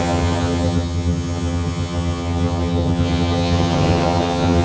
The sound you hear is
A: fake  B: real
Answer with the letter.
A